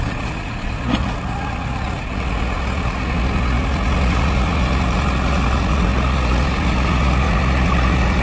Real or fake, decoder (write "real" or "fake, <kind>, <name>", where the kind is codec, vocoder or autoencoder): fake, vocoder, Vocos